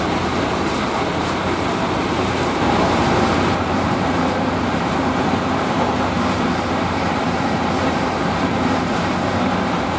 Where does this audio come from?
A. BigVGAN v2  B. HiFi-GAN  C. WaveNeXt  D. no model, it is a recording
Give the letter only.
A